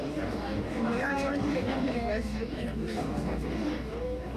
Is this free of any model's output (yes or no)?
no